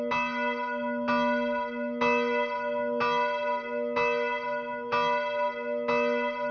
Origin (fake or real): real